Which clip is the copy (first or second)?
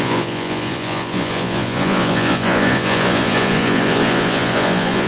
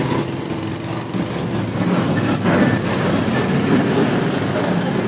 first